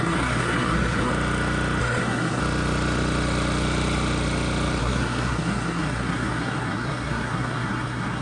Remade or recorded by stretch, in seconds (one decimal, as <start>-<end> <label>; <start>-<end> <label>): 0.0-1.1 remade; 1.1-1.8 recorded; 1.8-2.4 remade; 2.4-4.8 recorded; 4.8-8.2 remade

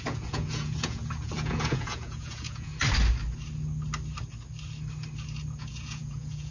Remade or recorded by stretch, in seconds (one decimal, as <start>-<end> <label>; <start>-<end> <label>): 0.0-2.7 remade; 2.7-5.6 recorded; 5.6-6.5 remade

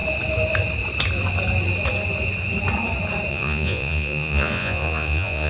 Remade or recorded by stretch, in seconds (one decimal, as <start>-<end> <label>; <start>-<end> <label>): 0.0-3.3 recorded; 3.3-5.5 remade

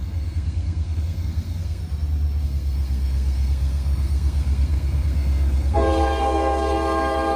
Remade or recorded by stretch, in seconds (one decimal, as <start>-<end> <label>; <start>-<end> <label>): 0.0-1.8 remade; 1.8-2.4 recorded; 2.4-7.4 remade

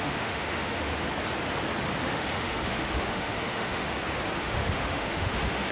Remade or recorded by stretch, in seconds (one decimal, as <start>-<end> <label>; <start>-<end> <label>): 0.0-0.9 remade; 0.9-2.0 recorded; 2.0-3.9 remade; 3.9-4.4 recorded; 4.4-5.7 remade

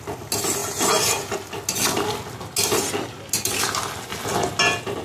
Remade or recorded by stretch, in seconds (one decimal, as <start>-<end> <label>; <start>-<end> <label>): 0.0-5.0 recorded